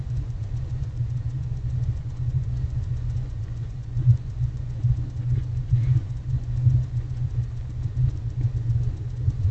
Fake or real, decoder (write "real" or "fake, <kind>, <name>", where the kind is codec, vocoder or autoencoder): fake, vocoder, Vocos